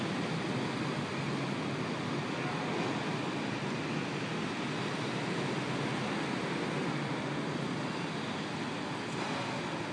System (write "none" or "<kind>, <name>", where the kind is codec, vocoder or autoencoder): none